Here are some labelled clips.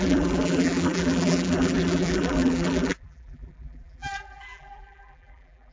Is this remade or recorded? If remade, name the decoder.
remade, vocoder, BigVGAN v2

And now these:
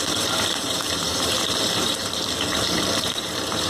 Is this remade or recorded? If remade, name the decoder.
remade, vocoder, BigVGAN v2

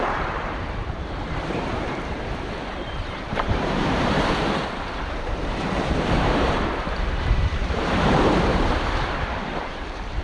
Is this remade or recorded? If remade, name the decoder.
remade, vocoder, BigVGAN v2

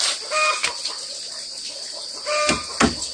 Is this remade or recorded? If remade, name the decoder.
recorded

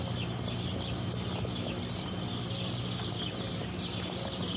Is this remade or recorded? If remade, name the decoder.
recorded